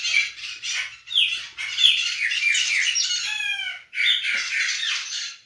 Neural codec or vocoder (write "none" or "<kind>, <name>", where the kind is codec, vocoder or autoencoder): none